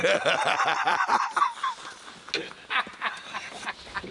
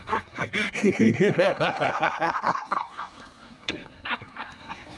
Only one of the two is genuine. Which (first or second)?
first